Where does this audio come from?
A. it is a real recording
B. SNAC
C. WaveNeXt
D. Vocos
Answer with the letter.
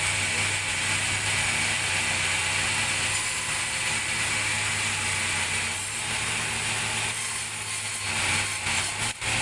A